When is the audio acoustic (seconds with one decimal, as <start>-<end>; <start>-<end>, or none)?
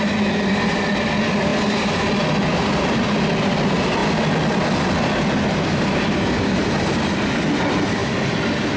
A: 0.0-8.8